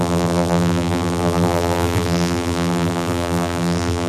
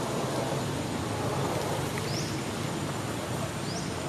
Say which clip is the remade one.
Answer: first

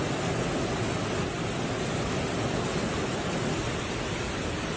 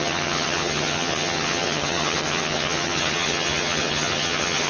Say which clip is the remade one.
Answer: second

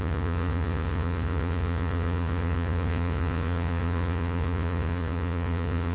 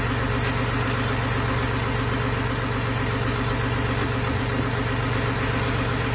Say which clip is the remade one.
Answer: first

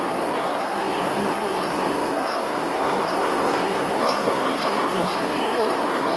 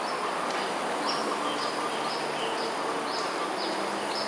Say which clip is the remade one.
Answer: first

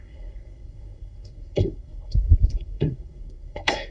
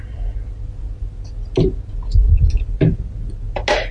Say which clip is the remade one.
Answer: first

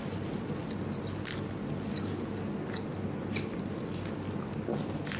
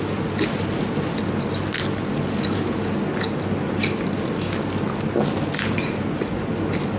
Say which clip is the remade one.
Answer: first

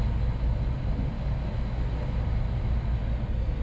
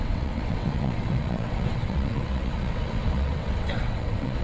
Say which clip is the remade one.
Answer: second